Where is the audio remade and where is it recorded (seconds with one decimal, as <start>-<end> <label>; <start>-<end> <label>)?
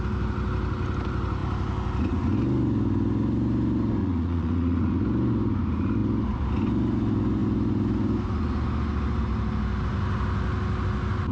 0.0-4.0 recorded; 4.0-5.0 remade; 5.0-11.3 recorded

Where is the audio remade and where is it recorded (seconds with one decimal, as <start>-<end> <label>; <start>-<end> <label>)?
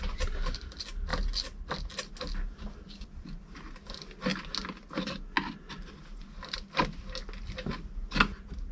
0.0-8.7 recorded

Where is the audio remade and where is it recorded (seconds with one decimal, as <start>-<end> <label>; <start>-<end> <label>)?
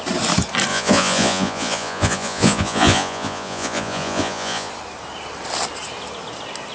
0.0-0.7 recorded; 0.7-4.7 remade; 4.7-6.7 recorded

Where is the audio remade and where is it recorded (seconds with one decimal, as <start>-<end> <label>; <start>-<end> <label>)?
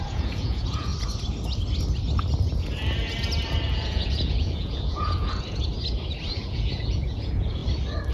0.0-0.9 remade; 0.9-3.7 recorded; 3.7-5.7 remade; 5.7-6.3 recorded; 6.3-7.6 remade; 7.6-8.1 recorded